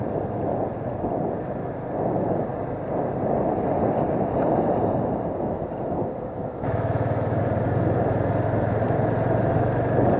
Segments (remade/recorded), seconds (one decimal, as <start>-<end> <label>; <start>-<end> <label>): 0.0-6.4 recorded; 6.4-7.4 remade; 7.4-10.2 recorded